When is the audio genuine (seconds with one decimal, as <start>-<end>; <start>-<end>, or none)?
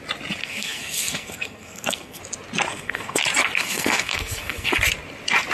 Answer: 0.0-0.4; 2.2-2.7; 3.2-3.6; 4.7-5.5